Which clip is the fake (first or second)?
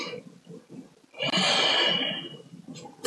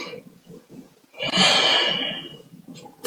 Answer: second